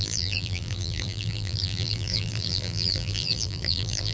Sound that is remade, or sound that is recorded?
remade